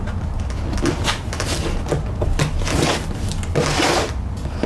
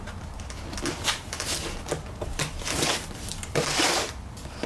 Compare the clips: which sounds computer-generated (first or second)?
second